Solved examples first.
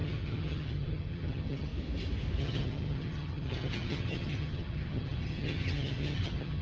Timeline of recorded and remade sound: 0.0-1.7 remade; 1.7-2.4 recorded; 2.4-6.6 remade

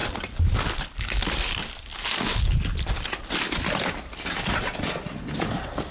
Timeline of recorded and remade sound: 0.0-5.9 recorded

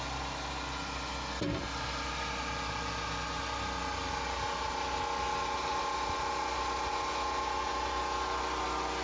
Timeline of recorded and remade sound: 0.0-9.0 recorded

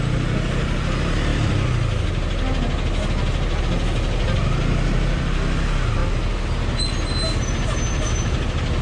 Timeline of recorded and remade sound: 0.0-8.8 recorded

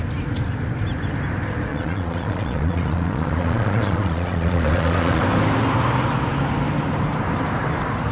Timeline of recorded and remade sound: 0.0-1.7 recorded; 1.7-5.2 remade; 5.2-8.1 recorded

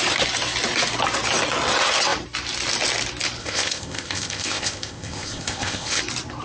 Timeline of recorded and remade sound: 0.0-3.4 recorded; 3.4-6.0 remade; 6.0-6.4 recorded